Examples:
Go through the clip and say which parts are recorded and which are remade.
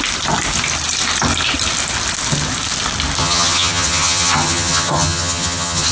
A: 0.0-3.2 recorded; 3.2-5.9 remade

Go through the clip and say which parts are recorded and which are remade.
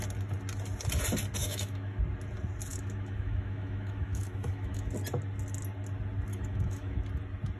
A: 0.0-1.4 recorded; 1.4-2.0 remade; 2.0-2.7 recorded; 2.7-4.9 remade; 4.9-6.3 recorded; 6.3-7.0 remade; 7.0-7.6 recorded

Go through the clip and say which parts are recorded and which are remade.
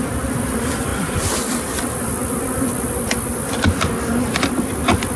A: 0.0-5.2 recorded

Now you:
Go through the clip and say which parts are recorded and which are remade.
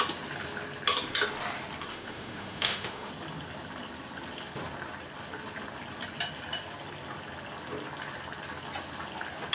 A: 0.0-1.9 recorded; 1.9-3.1 remade; 3.1-9.5 recorded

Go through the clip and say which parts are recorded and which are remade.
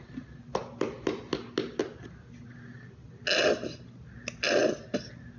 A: 0.0-5.4 recorded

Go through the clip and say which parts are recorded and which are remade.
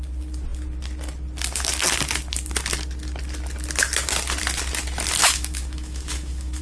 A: 0.0-5.2 recorded; 5.2-6.6 remade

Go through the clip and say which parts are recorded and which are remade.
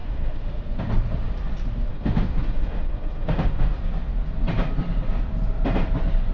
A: 0.0-0.6 remade; 0.6-1.9 recorded; 1.9-3.8 remade; 3.8-6.3 recorded